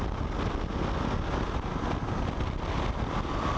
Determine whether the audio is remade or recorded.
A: recorded